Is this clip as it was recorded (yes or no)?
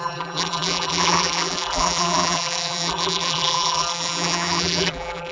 no